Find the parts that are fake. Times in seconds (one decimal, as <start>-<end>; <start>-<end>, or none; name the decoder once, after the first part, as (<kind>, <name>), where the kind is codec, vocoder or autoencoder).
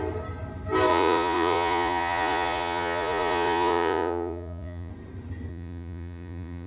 0.9-4.9 (vocoder, Vocos); 5.5-6.7